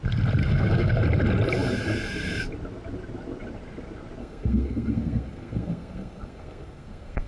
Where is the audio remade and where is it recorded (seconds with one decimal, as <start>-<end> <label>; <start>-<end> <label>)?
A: 0.0-0.4 recorded; 0.4-1.0 remade; 1.0-4.2 recorded; 4.2-7.3 remade